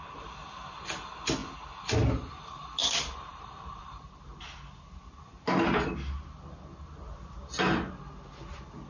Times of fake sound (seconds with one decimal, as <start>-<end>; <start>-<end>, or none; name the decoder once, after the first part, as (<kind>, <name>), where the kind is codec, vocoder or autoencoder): 2.8-3.8 (vocoder, BigVGAN v2)